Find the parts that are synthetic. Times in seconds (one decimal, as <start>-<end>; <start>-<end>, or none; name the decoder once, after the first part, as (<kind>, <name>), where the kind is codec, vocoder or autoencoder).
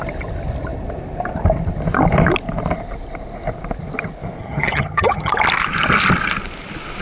4.4-5.3 (vocoder, HiFi-GAN)